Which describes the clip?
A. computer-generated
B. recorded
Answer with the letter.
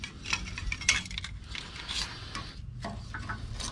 B